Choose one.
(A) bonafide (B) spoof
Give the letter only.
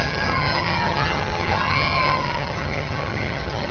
B